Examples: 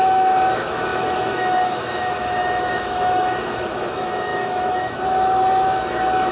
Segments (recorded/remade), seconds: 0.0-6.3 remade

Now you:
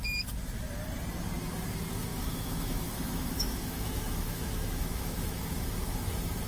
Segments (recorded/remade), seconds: 0.0-2.1 recorded; 2.1-6.0 remade; 6.0-6.5 recorded